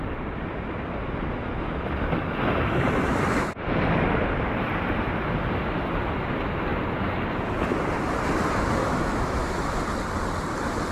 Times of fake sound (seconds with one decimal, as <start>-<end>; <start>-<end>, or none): 8.8-9.7